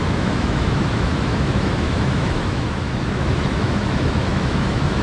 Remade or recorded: remade